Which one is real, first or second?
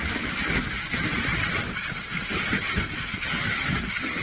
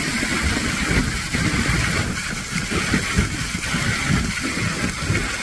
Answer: first